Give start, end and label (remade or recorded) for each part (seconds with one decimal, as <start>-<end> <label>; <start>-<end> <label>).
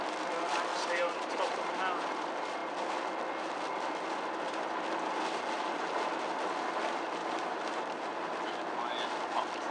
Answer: 0.0-0.7 recorded; 0.7-1.7 remade; 1.7-7.2 recorded; 7.2-7.8 remade; 7.8-9.7 recorded